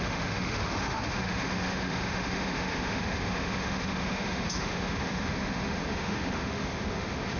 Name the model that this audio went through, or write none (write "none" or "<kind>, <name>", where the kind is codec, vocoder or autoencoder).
autoencoder, DAC-VAE